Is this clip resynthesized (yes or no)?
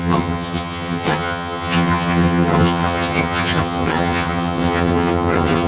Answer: yes